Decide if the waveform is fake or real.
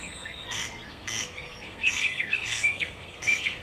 fake